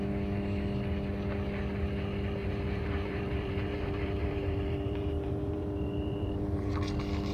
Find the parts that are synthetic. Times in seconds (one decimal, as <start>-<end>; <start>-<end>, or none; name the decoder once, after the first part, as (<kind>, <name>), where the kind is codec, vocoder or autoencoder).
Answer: 2.4-6.7 (vocoder, BigVGAN v2)